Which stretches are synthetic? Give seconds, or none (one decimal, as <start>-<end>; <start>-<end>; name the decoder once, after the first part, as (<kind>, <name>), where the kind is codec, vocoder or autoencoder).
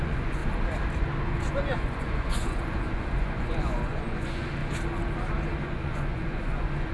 0.0-0.4 (vocoder, Vocos); 1.2-4.6; 5.6-6.9